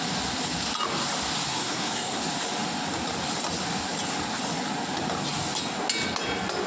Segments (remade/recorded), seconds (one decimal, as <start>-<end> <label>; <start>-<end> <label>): 0.0-1.5 recorded; 1.5-2.2 remade; 2.2-6.7 recorded